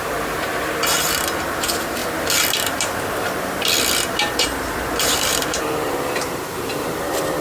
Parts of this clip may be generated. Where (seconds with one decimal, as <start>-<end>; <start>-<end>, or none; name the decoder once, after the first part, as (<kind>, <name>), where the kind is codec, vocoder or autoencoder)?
0.0-2.0 (vocoder, BigVGAN v2); 4.4-7.4

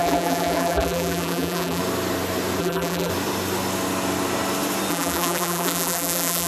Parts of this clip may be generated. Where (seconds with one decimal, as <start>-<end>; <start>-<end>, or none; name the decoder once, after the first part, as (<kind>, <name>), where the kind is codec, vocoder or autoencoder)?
0.0-1.8 (vocoder, BigVGAN v2); 2.6-3.1; 4.9-6.5

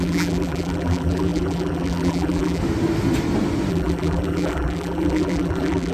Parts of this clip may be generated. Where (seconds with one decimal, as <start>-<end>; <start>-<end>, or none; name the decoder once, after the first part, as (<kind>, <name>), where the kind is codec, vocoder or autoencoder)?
0.0-2.6 (vocoder, BigVGAN v2); 3.7-5.9

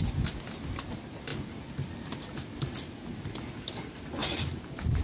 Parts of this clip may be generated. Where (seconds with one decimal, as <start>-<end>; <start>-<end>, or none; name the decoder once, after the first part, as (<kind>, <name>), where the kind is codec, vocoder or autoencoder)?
none